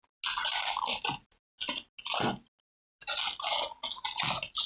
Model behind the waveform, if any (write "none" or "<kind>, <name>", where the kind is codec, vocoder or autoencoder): none